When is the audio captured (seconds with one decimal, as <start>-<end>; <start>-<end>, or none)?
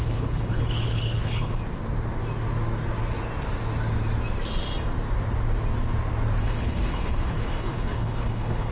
1.6-6.4